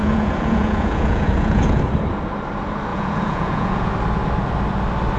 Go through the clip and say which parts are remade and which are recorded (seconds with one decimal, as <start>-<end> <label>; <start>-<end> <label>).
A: 0.0-1.8 remade; 1.8-2.9 recorded; 2.9-3.9 remade; 3.9-5.2 recorded